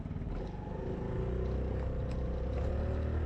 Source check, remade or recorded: recorded